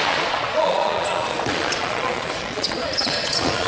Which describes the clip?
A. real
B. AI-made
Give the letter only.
B